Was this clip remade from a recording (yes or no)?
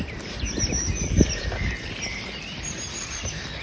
no